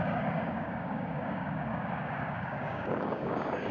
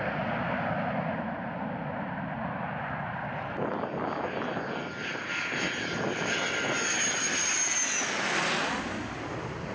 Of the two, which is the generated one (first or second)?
first